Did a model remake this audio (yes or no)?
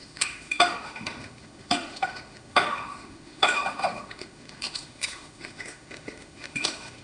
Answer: yes